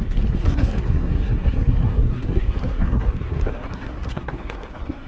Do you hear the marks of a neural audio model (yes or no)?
yes